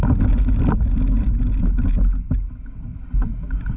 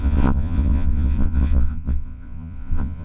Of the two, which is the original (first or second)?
first